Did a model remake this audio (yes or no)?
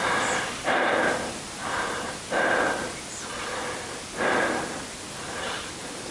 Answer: no